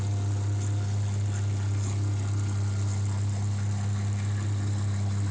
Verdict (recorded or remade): recorded